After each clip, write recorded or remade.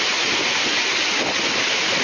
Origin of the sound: recorded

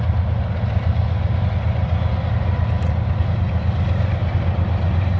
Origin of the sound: recorded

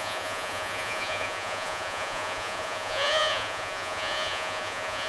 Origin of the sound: remade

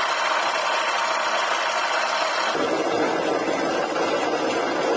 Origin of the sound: recorded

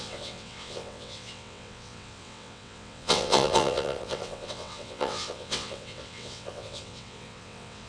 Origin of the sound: remade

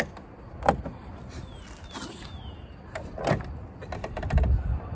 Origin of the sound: recorded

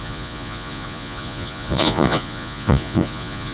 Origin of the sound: remade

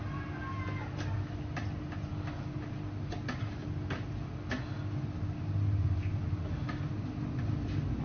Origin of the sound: recorded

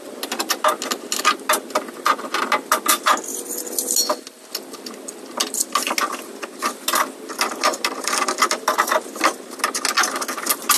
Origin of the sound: recorded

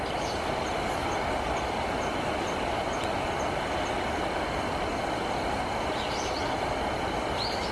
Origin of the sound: recorded